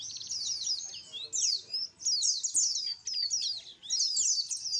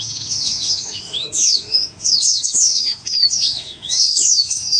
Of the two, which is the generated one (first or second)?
second